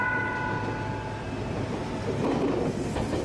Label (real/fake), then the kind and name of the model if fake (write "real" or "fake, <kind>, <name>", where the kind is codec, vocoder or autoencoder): real